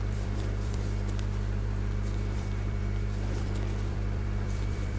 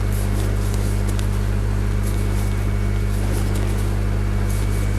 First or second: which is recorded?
second